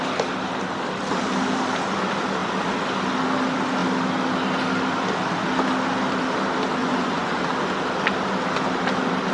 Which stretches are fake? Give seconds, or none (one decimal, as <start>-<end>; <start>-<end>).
6.8-7.4